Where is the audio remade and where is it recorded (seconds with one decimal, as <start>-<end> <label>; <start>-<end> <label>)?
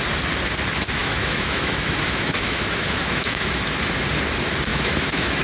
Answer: 0.0-1.0 recorded; 1.0-3.7 remade; 3.7-4.7 recorded; 4.7-5.4 remade